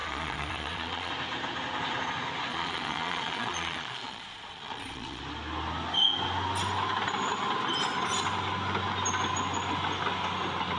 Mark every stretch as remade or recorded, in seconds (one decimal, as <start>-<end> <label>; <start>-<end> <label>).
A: 0.0-1.1 remade; 1.1-2.5 recorded; 2.5-5.2 remade; 5.2-10.8 recorded